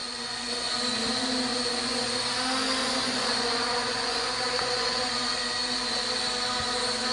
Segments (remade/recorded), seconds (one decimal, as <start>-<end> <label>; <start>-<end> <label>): 0.0-0.7 remade; 0.7-1.5 recorded; 1.5-2.2 remade; 2.2-2.8 recorded; 2.8-5.4 remade; 5.4-7.1 recorded